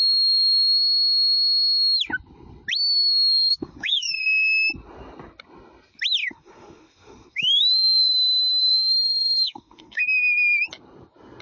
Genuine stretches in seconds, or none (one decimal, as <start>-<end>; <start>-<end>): 0.0-3.5; 4.1-6.2; 10.0-11.4